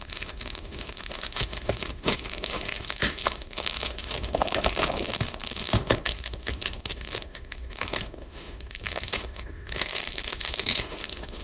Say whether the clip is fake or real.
fake